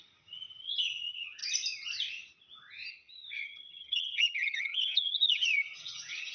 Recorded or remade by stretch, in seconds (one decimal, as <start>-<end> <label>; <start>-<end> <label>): 0.0-1.4 remade; 1.4-2.9 recorded; 2.9-6.3 remade